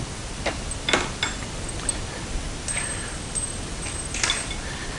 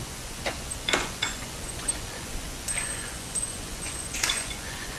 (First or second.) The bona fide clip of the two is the first